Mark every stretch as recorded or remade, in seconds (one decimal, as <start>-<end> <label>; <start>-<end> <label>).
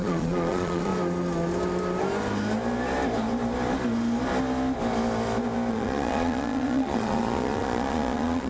0.0-0.9 remade; 0.9-5.7 recorded; 5.7-8.5 remade